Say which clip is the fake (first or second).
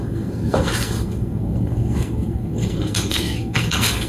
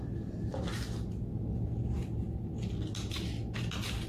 first